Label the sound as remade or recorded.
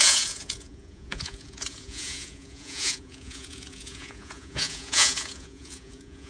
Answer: remade